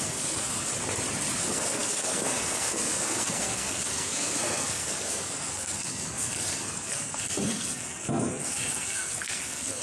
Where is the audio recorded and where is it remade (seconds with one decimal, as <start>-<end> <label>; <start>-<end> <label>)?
0.0-0.7 remade; 0.7-1.4 recorded; 1.4-9.8 remade

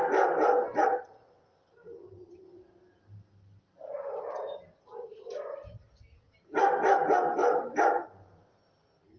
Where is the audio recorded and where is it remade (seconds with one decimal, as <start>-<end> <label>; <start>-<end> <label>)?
0.0-7.4 recorded; 7.4-8.5 remade; 8.5-9.2 recorded